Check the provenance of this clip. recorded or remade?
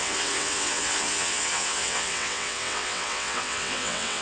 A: remade